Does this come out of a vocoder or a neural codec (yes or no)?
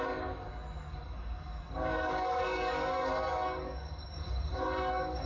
yes